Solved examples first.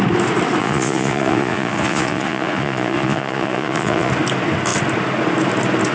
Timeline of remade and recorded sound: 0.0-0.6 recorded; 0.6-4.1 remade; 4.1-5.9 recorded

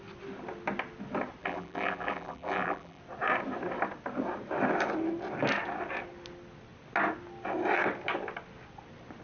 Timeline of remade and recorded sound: 0.0-1.4 recorded; 1.4-3.0 remade; 3.0-9.2 recorded